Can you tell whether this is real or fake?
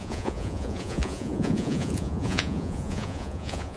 fake